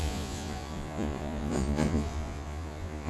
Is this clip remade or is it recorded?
remade